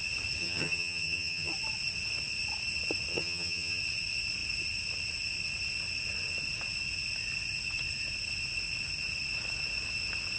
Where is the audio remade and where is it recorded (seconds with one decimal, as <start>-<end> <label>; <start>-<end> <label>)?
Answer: 0.0-0.4 recorded; 0.4-1.5 remade; 1.5-3.1 recorded; 3.1-3.8 remade; 3.8-10.4 recorded